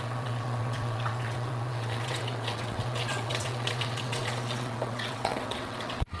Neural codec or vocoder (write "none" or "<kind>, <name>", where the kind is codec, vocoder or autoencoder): vocoder, WaveNeXt